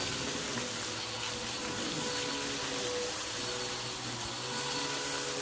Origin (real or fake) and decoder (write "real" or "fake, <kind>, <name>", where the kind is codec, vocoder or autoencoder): real